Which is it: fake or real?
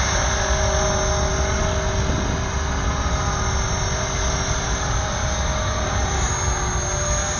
real